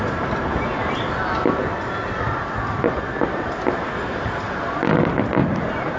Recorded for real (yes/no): yes